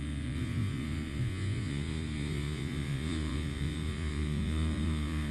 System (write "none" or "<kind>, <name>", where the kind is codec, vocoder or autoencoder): vocoder, Vocos